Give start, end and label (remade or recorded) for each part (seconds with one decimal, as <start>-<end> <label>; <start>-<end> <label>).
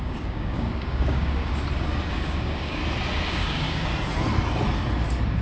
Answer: 0.0-1.5 remade; 1.5-2.1 recorded; 2.1-2.8 remade; 2.8-3.3 recorded; 3.3-3.9 remade; 3.9-5.4 recorded